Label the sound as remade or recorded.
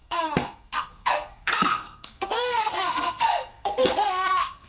remade